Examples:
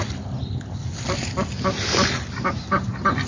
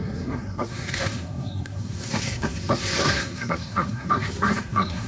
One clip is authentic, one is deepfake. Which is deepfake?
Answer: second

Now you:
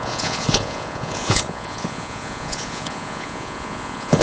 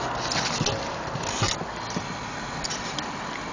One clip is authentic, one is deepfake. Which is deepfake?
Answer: first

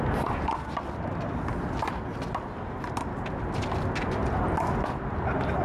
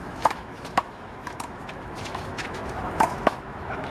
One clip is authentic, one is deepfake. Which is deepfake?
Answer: second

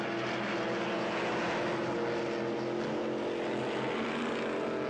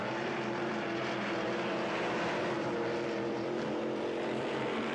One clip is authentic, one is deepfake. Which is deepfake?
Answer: second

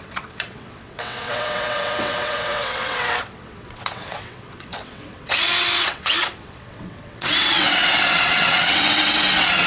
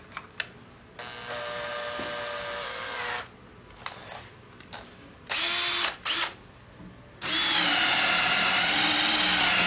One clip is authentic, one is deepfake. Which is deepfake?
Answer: first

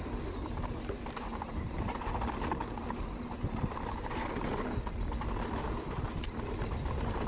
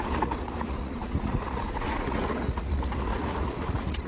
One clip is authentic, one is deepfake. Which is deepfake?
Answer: second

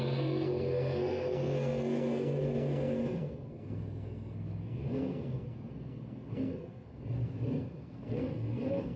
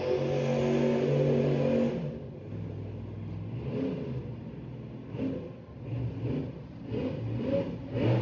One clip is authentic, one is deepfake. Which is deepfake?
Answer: first